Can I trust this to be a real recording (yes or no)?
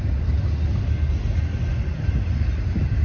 yes